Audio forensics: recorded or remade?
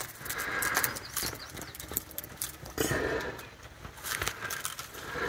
recorded